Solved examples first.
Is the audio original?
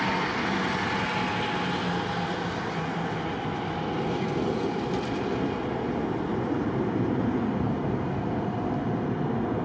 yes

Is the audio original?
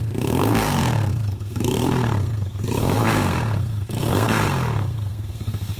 no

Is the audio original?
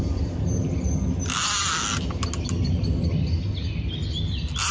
yes